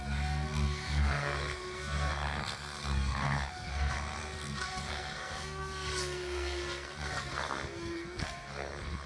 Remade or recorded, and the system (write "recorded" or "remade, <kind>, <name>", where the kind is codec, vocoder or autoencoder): remade, codec, SNAC